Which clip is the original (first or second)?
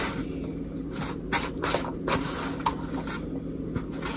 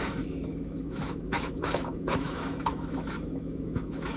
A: first